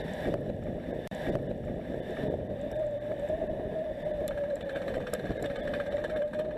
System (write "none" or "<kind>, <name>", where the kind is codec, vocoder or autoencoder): vocoder, BigVGAN v2